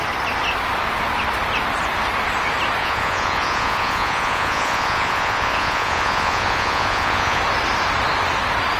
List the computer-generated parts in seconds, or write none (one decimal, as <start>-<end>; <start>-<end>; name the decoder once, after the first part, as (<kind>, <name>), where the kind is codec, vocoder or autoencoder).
2.8-7.4 (vocoder, Vocos)